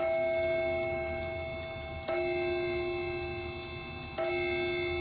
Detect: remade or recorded recorded